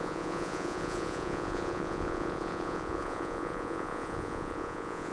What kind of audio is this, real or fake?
fake